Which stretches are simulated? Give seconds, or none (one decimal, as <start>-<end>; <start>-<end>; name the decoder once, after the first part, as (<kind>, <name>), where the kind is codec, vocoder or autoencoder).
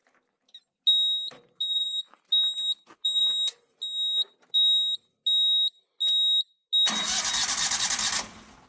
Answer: none